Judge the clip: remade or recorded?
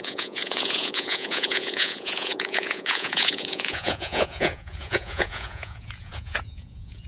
remade